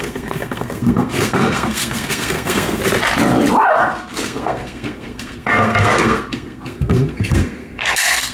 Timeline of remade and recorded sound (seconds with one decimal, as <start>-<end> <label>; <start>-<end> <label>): 0.0-2.8 remade; 2.8-3.7 recorded; 3.7-8.3 remade